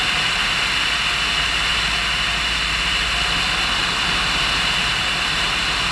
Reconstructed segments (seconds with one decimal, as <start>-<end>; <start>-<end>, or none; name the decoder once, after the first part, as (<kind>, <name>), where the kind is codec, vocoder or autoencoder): none